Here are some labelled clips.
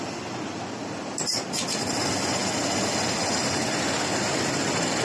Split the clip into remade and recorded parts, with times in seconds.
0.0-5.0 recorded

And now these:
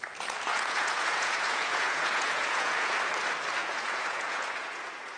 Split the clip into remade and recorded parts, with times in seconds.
0.0-0.5 recorded; 0.5-3.0 remade; 3.0-3.6 recorded; 3.6-5.2 remade

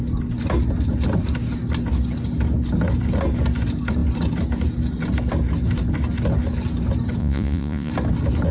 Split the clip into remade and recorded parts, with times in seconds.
0.0-7.2 recorded; 7.2-7.9 remade; 7.9-8.5 recorded

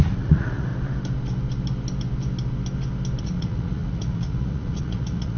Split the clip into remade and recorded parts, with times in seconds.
0.0-0.7 remade; 0.7-3.2 recorded; 3.2-5.4 remade

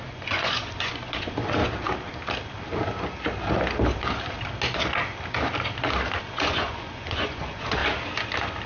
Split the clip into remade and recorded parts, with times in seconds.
0.0-1.6 remade; 1.6-6.2 recorded; 6.2-7.8 remade; 7.8-8.7 recorded

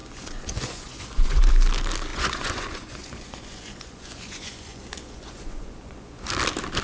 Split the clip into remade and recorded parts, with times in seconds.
0.0-1.5 remade; 1.5-2.1 recorded; 2.1-6.2 remade; 6.2-6.8 recorded

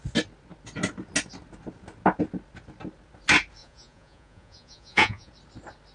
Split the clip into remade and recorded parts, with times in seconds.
0.0-3.6 recorded; 3.6-5.3 remade; 5.3-5.9 recorded

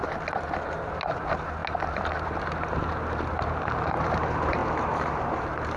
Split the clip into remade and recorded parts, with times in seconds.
0.0-5.8 recorded